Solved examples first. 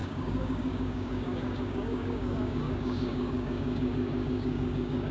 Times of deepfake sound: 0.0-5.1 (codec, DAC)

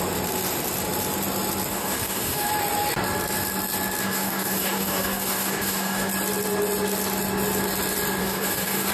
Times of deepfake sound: 1.7-2.5 (codec, DAC); 4.0-6.1; 8.2-8.9

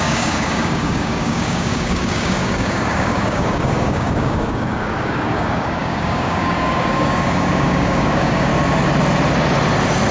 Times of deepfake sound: 0.0-8.5 (codec, DAC)

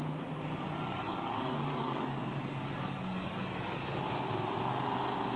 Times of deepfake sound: 0.9-4.0 (codec, DAC)

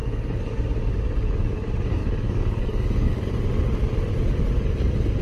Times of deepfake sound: 2.0-3.3 (codec, DAC)

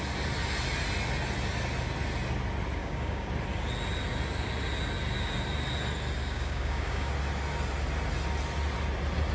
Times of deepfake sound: 2.8-3.3 (codec, DAC); 6.2-7.1

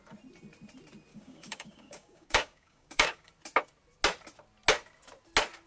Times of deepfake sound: 1.1-3.3 (codec, DAC)

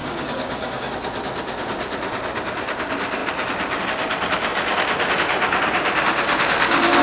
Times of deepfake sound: 0.0-0.9 (codec, DAC)